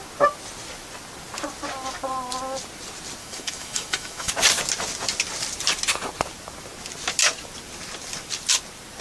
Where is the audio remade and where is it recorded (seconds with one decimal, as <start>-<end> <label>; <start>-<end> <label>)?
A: 0.0-3.2 recorded; 3.2-4.3 remade; 4.3-9.0 recorded